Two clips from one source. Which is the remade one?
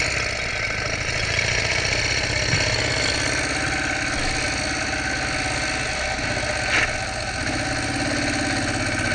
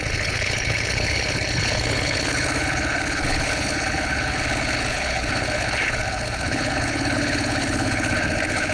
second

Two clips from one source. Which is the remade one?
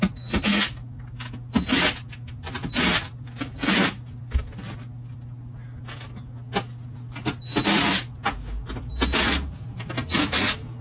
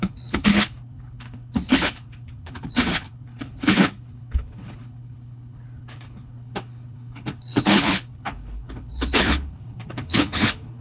second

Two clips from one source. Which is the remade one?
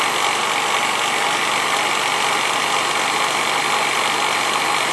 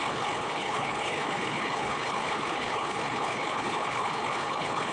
second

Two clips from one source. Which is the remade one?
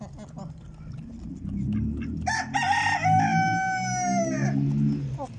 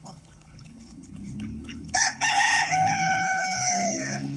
second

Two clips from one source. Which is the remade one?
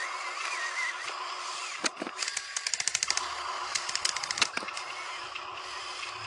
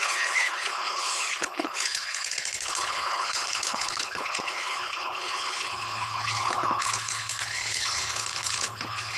second